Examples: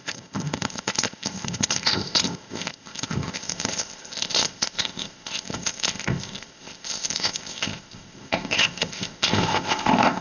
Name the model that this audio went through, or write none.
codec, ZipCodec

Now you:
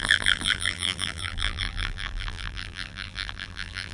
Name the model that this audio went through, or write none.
vocoder, BigVGAN v2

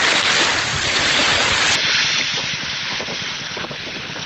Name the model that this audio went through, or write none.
none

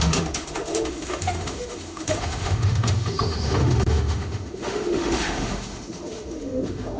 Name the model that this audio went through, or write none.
autoencoder, DAC-VAE